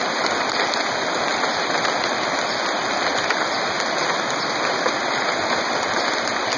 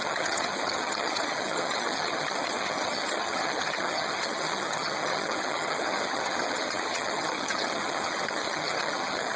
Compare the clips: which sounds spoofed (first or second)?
second